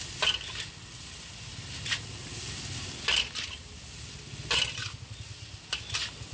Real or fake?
real